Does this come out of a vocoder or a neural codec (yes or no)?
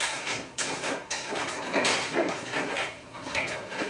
yes